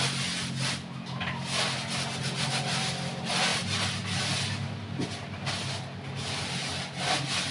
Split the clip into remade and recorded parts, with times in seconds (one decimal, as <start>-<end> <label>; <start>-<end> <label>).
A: 0.0-7.5 recorded